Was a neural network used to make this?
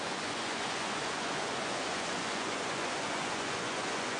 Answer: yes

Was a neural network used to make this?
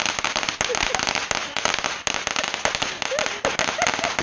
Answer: no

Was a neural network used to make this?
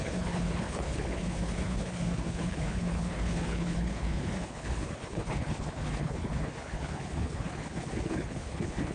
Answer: yes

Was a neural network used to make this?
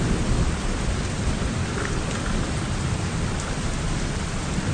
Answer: no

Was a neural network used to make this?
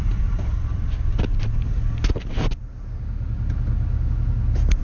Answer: no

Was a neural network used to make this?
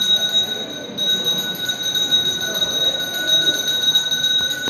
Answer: no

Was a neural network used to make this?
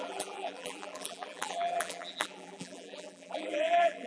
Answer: yes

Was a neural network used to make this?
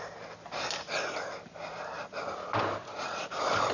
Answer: no